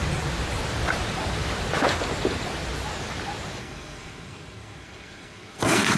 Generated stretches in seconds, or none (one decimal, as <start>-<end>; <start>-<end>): 3.6-6.0